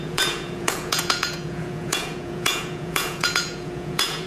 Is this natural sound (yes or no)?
no